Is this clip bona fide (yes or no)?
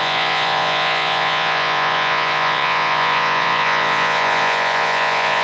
no